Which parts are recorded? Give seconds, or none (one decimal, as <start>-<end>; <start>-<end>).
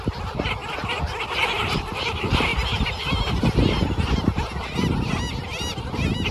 0.6-1.2; 2.5-6.3